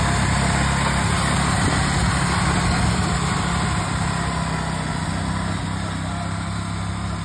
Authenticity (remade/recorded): recorded